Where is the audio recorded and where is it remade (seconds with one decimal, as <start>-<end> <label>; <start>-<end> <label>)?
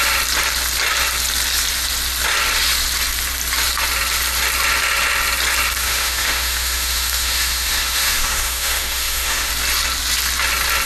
0.0-5.8 recorded; 5.8-9.5 remade; 9.5-10.9 recorded